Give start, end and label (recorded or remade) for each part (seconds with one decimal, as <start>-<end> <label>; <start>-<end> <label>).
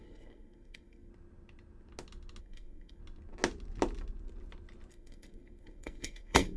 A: 0.0-1.1 remade; 1.1-2.4 recorded; 2.4-3.0 remade; 3.0-4.9 recorded; 4.9-6.6 remade